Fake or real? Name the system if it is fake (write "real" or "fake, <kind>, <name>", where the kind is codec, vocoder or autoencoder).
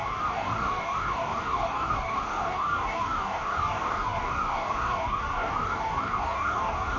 fake, codec, DAC